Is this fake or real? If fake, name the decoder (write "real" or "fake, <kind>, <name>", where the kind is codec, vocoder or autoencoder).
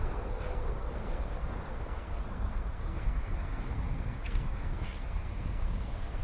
fake, codec, SNAC